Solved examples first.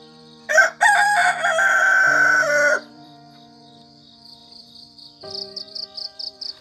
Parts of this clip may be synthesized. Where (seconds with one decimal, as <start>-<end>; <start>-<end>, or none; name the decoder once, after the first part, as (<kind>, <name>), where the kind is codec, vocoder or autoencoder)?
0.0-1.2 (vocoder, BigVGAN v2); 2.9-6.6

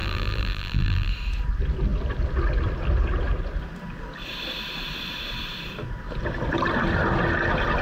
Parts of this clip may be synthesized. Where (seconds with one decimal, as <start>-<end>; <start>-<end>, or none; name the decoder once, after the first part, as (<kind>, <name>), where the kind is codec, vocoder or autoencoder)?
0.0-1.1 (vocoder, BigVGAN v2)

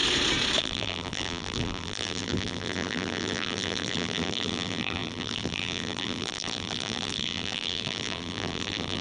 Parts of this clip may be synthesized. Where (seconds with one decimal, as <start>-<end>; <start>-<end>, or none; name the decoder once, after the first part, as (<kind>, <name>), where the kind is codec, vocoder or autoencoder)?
0.6-9.0 (vocoder, BigVGAN v2)

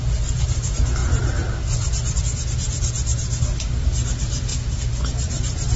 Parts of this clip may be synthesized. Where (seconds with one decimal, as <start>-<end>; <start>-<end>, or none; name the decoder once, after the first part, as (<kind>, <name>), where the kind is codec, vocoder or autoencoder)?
none

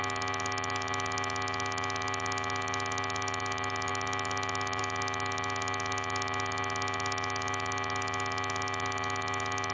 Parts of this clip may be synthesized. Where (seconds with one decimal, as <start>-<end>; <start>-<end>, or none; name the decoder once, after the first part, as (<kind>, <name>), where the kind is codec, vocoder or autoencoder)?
none

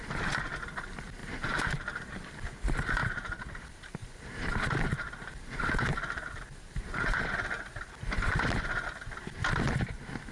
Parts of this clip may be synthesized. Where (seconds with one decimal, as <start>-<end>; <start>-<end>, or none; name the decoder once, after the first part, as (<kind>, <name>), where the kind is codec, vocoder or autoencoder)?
1.2-2.1 (vocoder, BigVGAN v2); 3.0-3.6; 4.0-7.2